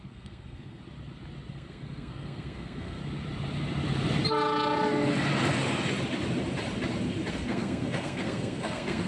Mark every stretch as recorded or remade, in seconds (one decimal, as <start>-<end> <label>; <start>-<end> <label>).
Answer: 0.0-0.8 remade; 0.8-1.5 recorded; 1.5-3.0 remade; 3.0-7.3 recorded; 7.3-9.1 remade